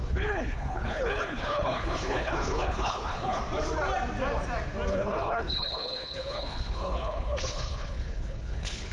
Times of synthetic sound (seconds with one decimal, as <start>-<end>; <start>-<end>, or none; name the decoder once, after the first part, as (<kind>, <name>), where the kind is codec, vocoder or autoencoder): 0.0-3.4 (codec, HILCodec); 4.9-8.9